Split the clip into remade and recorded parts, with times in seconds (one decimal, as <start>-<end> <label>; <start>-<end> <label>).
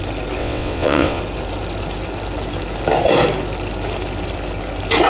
0.0-0.4 recorded; 0.4-1.2 remade; 1.2-5.1 recorded